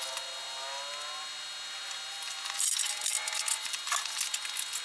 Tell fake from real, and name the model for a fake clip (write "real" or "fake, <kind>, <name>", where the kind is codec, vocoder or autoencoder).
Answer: real